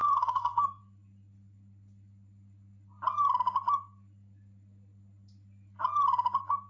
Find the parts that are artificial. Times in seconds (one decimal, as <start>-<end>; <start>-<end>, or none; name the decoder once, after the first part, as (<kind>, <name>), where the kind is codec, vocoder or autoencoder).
0.0-0.8 (codec, SNAC)